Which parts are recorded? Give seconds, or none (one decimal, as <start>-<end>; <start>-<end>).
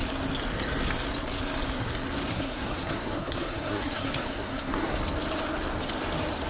0.0-2.3; 5.0-6.5